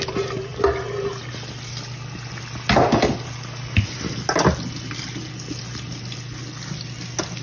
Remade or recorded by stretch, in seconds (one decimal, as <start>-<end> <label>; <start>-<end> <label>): 0.0-7.4 recorded